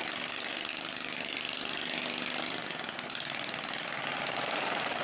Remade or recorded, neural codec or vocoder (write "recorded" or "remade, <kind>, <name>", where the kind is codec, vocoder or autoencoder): recorded